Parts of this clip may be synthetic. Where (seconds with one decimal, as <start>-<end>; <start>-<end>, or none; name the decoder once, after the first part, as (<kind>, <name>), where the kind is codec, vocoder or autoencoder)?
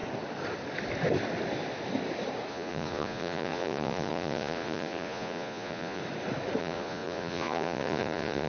2.5-6.0 (vocoder, Vocos); 6.6-8.5